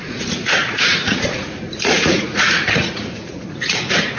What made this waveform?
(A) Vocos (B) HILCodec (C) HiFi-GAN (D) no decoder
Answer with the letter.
A